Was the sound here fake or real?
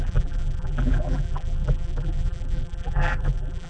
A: fake